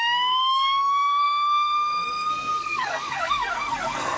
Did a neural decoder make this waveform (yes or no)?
yes